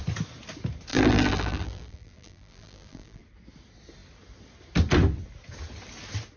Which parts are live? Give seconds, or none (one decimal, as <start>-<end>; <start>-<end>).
0.0-0.9; 3.2-6.4